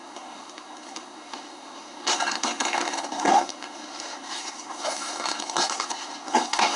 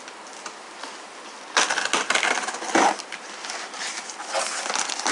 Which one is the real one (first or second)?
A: second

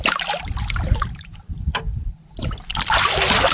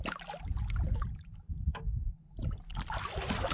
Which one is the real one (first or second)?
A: second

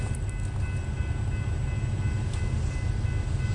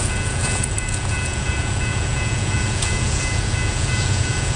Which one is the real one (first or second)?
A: first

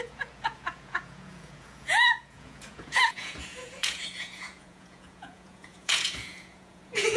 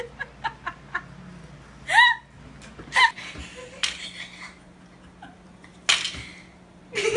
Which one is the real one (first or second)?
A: second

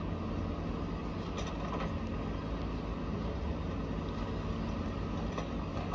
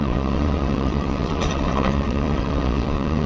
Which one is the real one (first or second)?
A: first